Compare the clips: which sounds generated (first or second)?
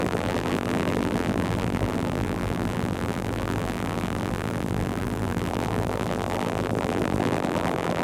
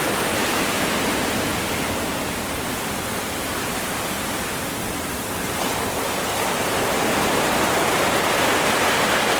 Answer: first